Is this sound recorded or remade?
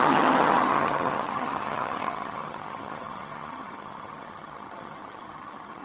remade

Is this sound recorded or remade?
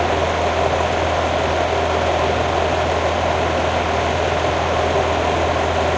recorded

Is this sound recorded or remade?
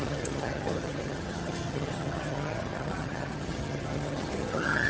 remade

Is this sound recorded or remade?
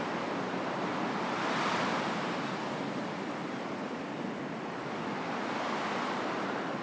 recorded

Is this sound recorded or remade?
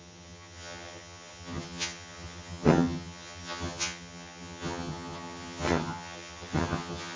remade